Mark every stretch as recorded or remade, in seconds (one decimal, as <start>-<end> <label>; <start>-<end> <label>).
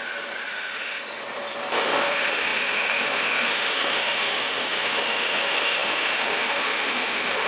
0.0-0.5 recorded; 0.5-1.2 remade; 1.2-1.8 recorded; 1.8-7.5 remade